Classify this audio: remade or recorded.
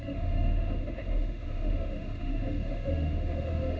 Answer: remade